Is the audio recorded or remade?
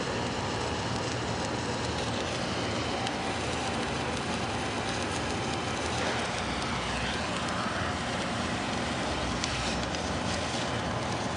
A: recorded